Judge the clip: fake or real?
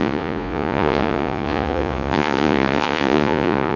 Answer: fake